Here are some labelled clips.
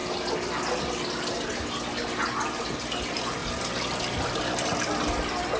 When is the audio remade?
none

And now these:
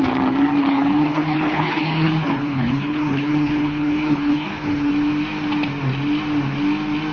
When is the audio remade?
0.6-4.9 (codec, HILCodec)

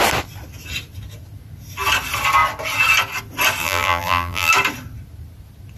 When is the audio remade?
3.6-4.5 (vocoder, BigVGAN v2)

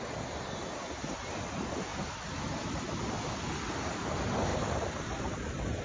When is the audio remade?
1.9-3.4 (vocoder, BigVGAN v2); 4.5-5.8

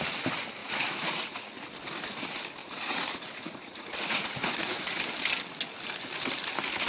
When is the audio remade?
0.6-1.5 (vocoder, Vocos); 2.6-5.0

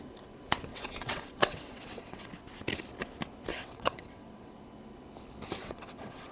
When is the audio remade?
0.7-2.3 (vocoder, WaveNeXt); 3.5-4.5; 5.6-6.3

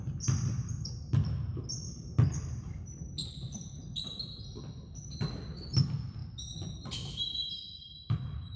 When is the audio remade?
1.7-4.0 (vocoder, BigVGAN v2); 6.2-8.6

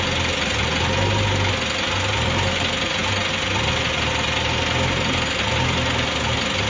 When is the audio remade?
none